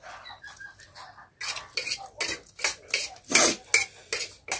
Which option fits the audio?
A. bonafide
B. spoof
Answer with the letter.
A